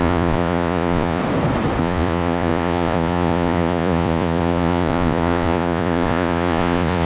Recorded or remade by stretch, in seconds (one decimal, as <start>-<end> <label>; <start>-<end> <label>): 0.0-1.2 remade; 1.2-1.8 recorded; 1.8-7.0 remade